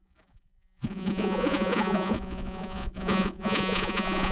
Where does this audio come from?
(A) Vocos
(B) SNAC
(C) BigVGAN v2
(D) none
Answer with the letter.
A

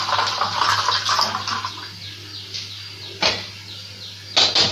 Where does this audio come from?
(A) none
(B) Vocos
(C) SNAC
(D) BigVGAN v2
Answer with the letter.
A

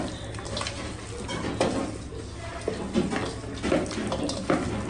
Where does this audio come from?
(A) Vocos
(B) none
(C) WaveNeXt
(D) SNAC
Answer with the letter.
B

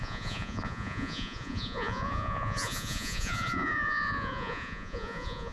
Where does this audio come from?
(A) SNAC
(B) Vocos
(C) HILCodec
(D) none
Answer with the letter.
B